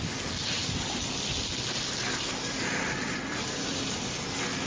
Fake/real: real